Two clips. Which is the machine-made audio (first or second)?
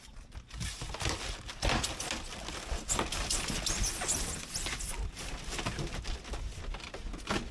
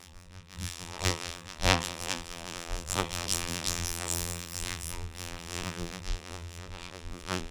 second